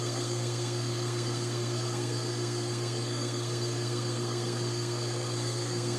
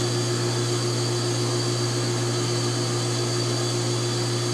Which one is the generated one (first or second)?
first